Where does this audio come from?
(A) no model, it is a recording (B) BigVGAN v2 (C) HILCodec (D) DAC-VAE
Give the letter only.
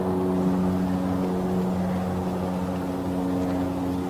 A